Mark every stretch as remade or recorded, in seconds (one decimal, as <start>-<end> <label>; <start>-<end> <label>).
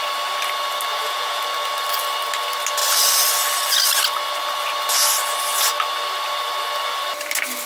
0.0-0.9 recorded; 0.9-1.4 remade; 1.4-7.7 recorded